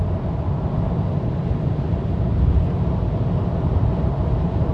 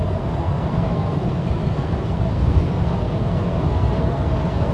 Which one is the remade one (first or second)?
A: second